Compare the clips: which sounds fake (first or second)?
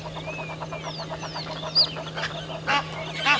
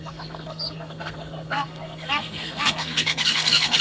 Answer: second